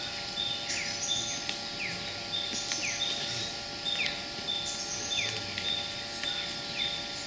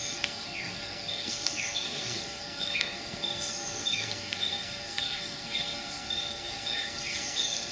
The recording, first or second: first